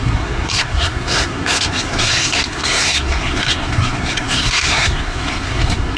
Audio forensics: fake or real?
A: fake